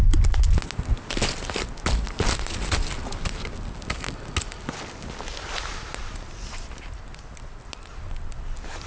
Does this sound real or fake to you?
real